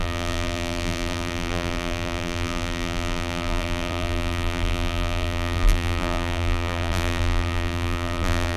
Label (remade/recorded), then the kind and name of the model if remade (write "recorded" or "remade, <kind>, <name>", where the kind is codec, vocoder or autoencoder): remade, vocoder, BigVGAN v2